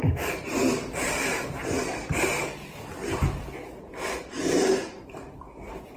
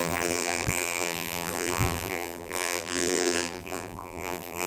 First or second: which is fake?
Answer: second